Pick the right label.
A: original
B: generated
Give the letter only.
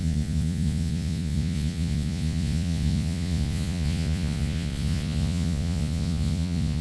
B